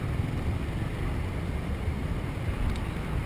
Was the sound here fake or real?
real